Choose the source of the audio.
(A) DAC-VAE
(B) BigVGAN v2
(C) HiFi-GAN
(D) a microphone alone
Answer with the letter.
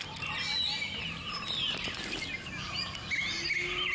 D